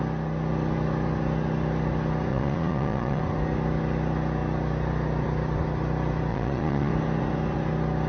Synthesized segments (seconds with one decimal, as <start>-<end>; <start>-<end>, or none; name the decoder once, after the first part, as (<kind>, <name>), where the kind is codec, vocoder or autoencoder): 2.3-3.2 (vocoder, Vocos); 6.3-6.9